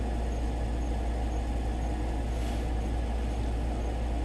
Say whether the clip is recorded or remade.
recorded